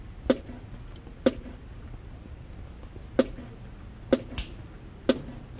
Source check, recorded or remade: recorded